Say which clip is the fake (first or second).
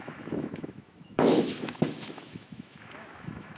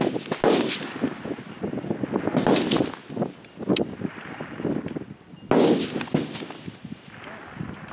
first